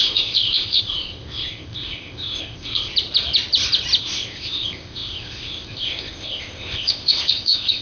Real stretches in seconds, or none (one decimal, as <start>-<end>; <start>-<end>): 2.9-4.0